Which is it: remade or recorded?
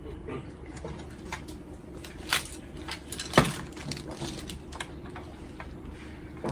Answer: recorded